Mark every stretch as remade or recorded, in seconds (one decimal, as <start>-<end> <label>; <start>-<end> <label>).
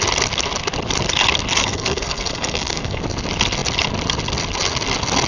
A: 0.0-1.6 recorded; 1.6-3.0 remade; 3.0-5.3 recorded